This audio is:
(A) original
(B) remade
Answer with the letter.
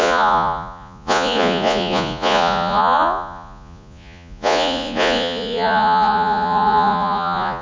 B